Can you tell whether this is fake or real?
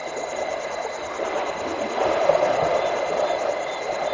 real